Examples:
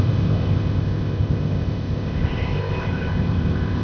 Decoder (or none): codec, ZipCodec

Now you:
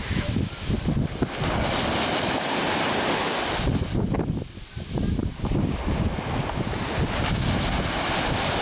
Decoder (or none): none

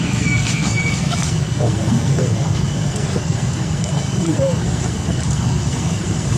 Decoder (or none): codec, SNAC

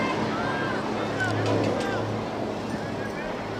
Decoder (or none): none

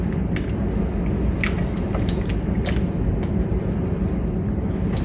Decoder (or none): none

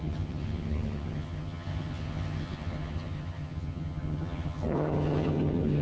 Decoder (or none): vocoder, HiFi-GAN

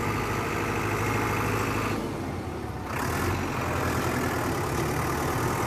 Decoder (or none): none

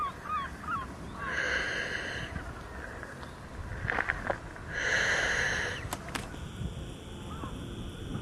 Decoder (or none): none